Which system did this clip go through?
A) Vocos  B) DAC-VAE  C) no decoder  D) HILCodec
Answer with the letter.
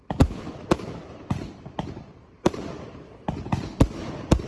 C